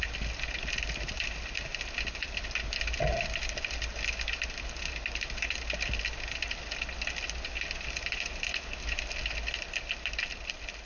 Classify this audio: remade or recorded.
recorded